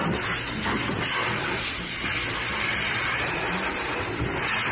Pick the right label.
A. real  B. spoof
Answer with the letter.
B